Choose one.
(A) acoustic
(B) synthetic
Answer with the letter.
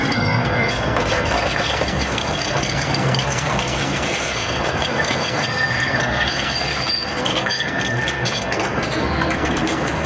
B